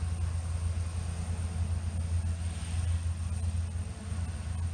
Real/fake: real